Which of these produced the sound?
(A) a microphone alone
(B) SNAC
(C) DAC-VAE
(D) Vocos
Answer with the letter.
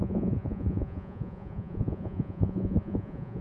D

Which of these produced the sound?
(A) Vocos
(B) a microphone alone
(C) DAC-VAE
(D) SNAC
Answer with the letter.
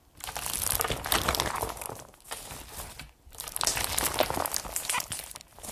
B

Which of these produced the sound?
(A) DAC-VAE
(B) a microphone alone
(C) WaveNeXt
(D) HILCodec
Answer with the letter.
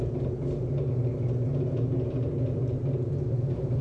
B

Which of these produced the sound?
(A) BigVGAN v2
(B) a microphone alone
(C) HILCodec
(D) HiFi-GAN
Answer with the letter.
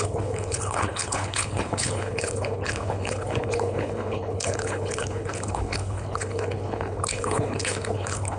C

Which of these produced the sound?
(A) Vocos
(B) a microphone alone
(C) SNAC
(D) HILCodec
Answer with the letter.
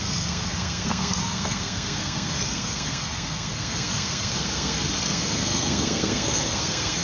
C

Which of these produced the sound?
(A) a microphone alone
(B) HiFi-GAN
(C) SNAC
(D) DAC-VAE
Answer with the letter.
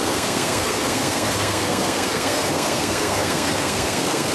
C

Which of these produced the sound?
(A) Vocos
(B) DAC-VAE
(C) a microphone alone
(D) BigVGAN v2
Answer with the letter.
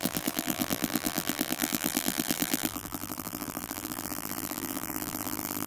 D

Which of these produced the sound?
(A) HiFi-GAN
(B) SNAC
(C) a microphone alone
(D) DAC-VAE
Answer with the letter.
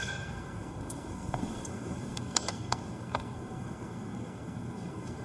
B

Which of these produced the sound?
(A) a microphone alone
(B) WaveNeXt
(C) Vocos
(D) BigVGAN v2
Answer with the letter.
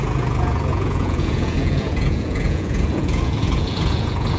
C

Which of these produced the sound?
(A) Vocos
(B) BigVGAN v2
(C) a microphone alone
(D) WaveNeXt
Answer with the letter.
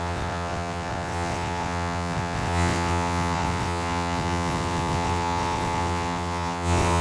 D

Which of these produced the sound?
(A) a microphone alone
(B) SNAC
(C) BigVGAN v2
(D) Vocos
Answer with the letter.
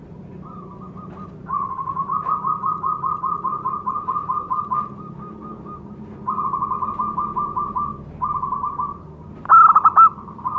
A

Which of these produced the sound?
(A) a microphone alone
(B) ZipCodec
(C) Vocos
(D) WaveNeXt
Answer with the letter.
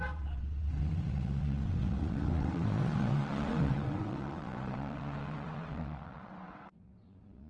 D